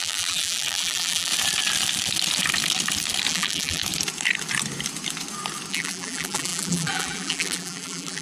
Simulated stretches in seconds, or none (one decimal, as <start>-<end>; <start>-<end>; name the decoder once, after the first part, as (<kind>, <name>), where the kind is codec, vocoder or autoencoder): 0.0-1.3 (vocoder, BigVGAN v2); 3.3-3.8; 5.7-8.2